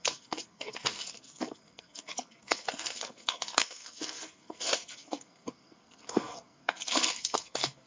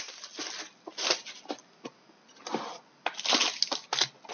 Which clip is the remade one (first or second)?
first